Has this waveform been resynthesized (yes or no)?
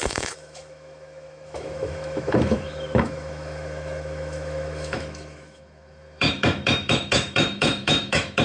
yes